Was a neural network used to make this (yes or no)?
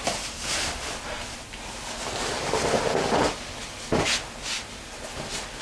no